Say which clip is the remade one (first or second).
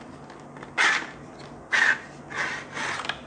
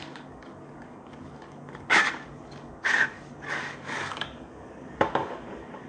second